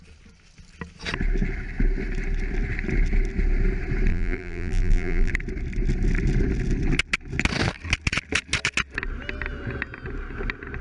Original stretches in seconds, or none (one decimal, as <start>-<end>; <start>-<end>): 0.0-4.1; 5.3-10.8